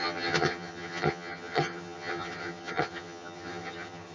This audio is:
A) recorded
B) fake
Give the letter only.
B